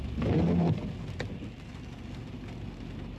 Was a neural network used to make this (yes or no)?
no